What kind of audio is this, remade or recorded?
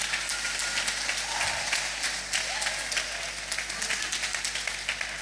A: recorded